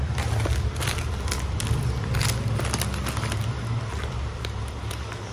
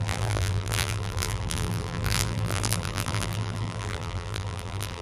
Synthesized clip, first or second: second